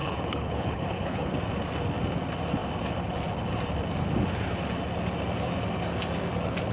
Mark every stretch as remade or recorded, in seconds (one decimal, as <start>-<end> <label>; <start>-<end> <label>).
0.0-1.3 remade; 1.3-6.7 recorded